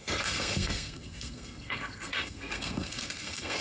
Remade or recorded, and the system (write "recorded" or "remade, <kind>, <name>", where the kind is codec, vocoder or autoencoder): remade, codec, SNAC